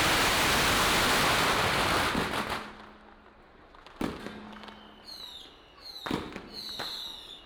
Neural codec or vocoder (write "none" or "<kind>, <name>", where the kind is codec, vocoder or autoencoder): none